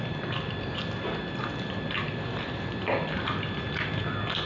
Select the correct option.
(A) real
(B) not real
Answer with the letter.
A